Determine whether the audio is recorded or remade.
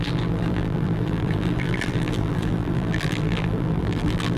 remade